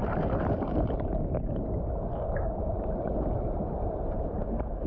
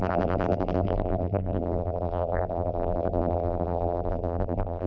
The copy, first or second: second